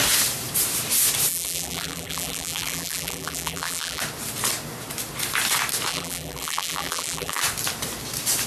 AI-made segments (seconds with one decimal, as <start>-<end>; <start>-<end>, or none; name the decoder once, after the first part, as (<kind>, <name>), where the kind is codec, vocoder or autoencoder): 1.3-4.0 (vocoder, BigVGAN v2); 5.9-7.4